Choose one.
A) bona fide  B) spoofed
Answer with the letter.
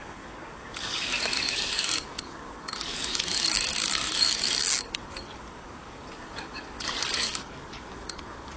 B